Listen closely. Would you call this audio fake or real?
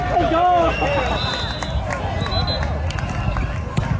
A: real